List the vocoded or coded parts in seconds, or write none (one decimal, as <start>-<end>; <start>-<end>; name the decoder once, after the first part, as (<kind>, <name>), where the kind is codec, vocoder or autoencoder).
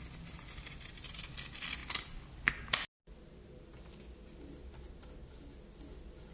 none